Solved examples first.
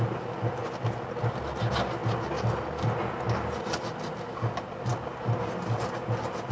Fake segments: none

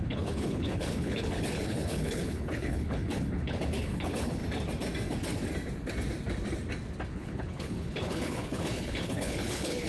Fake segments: 0.0-4.4 (codec, HILCodec); 7.1-9.9

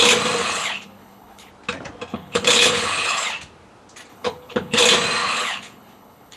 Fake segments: 0.4-1.5 (codec, HILCodec); 2.1-3.3; 4.1-4.8; 5.2-6.4

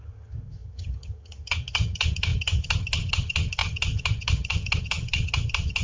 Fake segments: 0.0-5.8 (vocoder, HiFi-GAN)

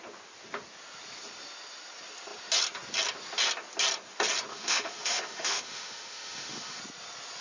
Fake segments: 4.5-6.8 (autoencoder, DAC-VAE)

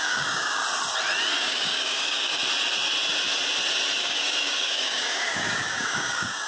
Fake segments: 0.0-0.6 (codec, DAC); 1.4-2.4; 4.0-6.5